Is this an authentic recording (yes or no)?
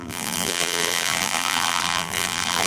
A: no